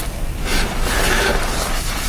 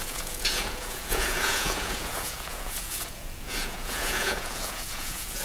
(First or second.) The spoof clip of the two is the second